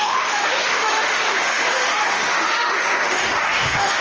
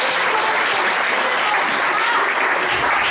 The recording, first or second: second